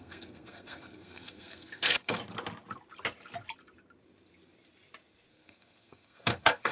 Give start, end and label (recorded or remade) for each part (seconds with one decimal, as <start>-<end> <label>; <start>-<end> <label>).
0.0-2.2 remade; 2.2-5.3 recorded; 5.3-6.7 remade